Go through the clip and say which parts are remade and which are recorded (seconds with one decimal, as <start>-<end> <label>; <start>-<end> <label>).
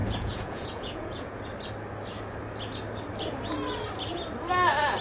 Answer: 0.0-1.4 remade; 1.4-5.0 recorded